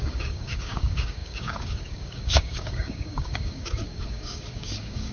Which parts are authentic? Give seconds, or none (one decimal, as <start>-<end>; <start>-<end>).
none